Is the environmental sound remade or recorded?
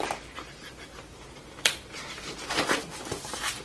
remade